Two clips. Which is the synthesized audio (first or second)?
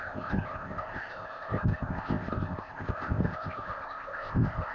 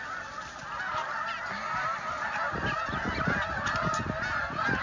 first